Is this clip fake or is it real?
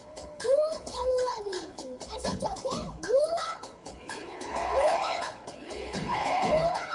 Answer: fake